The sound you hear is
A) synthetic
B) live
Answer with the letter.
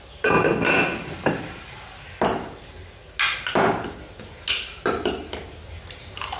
B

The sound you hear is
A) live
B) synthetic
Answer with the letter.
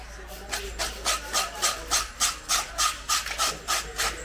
A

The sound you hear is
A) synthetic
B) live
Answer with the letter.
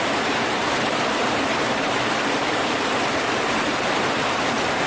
A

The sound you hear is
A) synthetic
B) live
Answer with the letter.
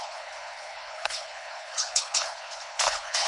A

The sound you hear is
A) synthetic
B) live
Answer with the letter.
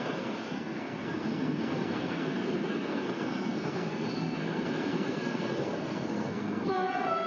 A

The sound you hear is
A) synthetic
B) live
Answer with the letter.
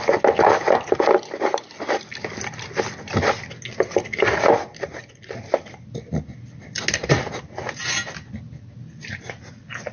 B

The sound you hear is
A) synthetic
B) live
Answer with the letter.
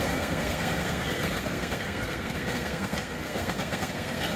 A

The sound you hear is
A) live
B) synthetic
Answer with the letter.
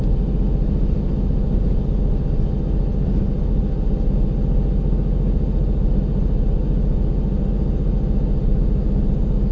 A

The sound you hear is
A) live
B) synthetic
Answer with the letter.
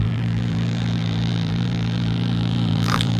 B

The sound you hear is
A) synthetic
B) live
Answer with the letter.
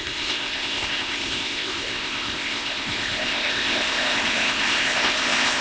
A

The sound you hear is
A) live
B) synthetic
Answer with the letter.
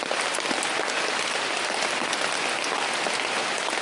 A